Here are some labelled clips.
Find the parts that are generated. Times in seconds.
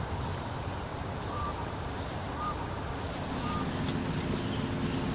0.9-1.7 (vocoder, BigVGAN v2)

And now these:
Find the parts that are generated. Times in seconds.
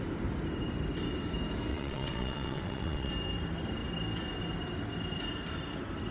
1.7-3.1 (vocoder, WaveNeXt)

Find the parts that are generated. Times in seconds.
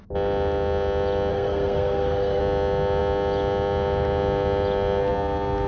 1.3-2.4 (codec, SNAC)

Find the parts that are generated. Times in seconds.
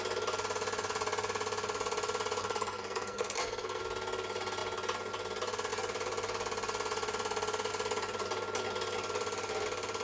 2.4-3.8 (codec, SNAC)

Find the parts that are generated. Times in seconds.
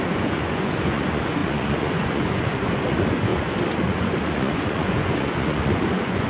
0.0-6.3 (vocoder, Vocos)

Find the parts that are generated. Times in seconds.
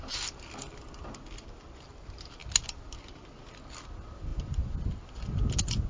none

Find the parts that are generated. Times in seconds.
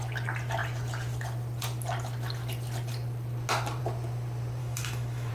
4.6-5.3 (autoencoder, DAC-VAE)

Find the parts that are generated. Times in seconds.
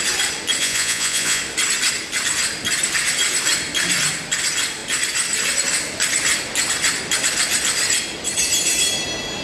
0.6-1.4 (vocoder, Vocos)